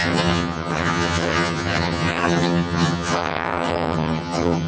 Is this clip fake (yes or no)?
yes